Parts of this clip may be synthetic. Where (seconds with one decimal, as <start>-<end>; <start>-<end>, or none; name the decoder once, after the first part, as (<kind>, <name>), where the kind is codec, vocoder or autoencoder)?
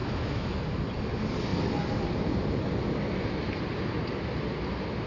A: 0.0-0.6 (autoencoder, DAC-VAE)